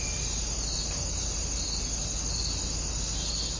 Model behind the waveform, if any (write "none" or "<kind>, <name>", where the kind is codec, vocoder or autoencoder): none